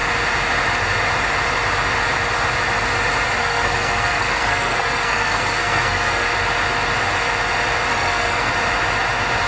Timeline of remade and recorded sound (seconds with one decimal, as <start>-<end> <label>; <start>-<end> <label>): 0.0-3.4 recorded; 3.4-6.3 remade; 6.3-7.9 recorded; 7.9-8.5 remade; 8.5-9.5 recorded